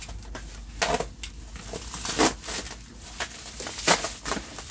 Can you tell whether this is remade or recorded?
recorded